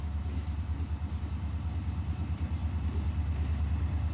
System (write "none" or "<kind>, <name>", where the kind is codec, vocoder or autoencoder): none